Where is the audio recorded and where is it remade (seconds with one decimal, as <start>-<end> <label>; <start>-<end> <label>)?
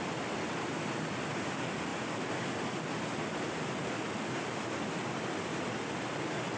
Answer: 0.0-6.6 recorded